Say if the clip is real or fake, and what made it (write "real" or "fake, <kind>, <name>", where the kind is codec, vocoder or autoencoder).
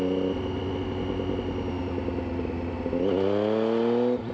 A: real